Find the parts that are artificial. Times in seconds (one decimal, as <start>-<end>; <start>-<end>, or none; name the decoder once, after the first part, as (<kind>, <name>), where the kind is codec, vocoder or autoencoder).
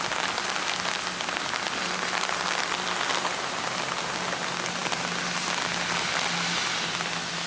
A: none